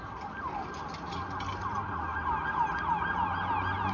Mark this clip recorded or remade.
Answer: recorded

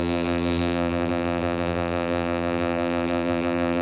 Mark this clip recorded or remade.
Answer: remade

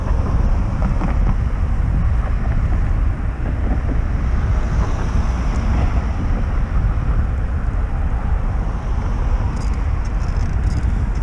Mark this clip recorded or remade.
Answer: recorded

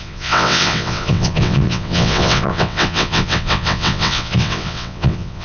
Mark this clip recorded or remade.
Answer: remade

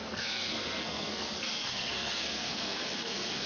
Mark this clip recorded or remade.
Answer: remade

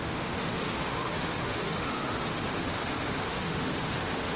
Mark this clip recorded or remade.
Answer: remade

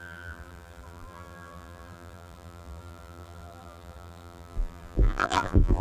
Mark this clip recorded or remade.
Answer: remade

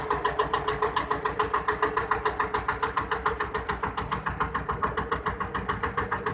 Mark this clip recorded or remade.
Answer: recorded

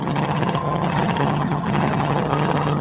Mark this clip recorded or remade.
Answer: remade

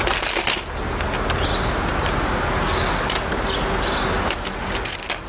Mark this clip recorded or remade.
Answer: recorded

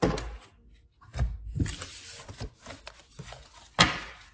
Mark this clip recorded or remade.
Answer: recorded